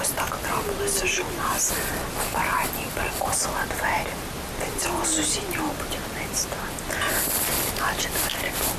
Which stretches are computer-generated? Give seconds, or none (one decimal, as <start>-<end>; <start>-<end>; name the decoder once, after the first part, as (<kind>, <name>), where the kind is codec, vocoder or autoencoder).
none